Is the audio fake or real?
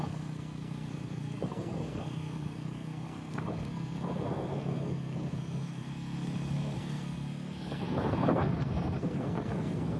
fake